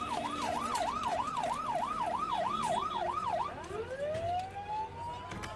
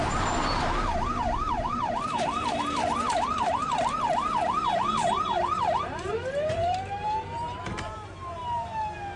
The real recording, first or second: first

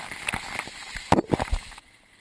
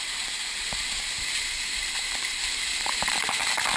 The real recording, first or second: first